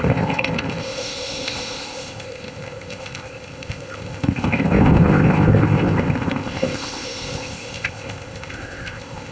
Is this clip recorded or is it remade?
remade